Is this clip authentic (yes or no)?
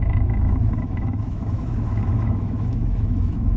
no